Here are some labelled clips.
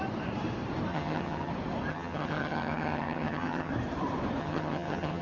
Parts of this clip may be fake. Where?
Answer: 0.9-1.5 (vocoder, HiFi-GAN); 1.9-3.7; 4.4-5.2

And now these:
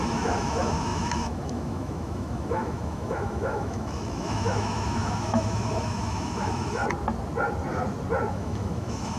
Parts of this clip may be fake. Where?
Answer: 0.0-6.8 (autoencoder, DAC-VAE); 8.3-9.2

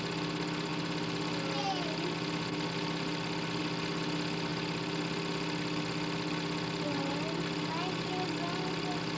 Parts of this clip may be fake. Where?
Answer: none

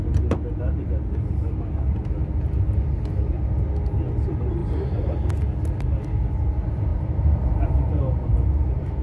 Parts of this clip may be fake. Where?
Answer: 4.6-5.3 (vocoder, BigVGAN v2); 6.9-9.0

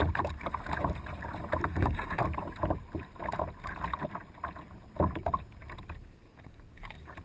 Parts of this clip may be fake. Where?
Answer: 1.7-2.2 (codec, DAC); 6.0-7.2

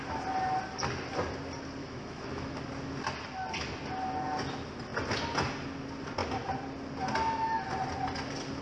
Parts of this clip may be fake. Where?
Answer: 1.8-2.6 (autoencoder, DAC-VAE)

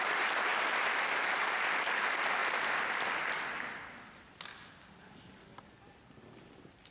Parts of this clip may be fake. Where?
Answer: none